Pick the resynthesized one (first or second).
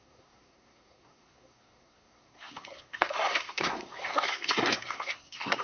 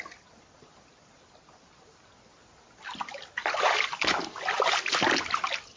first